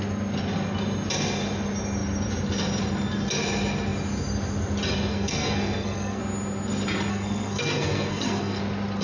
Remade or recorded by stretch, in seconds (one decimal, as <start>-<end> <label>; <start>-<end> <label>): 0.0-5.1 recorded; 5.1-6.2 remade; 6.2-7.1 recorded; 7.1-8.6 remade; 8.6-9.0 recorded